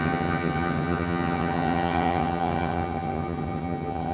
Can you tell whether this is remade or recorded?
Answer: remade